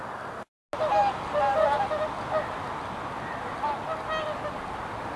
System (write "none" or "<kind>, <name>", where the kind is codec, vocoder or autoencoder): none